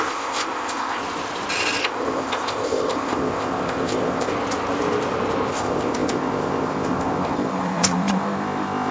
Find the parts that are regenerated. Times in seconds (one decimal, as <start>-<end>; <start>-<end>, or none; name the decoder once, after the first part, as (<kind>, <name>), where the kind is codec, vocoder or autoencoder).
0.0-1.0 (codec, ZipCodec); 1.8-4.3; 5.5-8.9